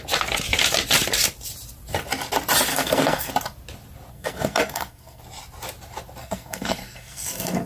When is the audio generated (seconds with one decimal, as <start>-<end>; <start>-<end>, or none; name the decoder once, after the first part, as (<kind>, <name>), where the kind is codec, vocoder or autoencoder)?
2.7-3.3 (codec, SNAC); 4.1-5.2; 6.2-7.7